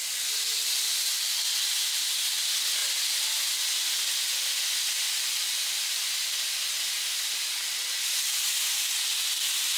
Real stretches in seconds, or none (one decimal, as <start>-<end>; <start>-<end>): 0.0-9.8